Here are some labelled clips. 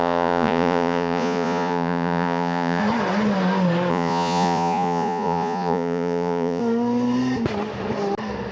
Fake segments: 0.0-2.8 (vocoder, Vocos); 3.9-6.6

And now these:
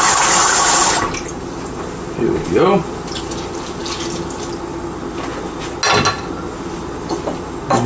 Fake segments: none

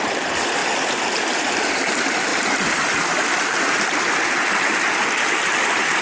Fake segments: 0.0-0.6 (vocoder, BigVGAN v2); 1.2-6.0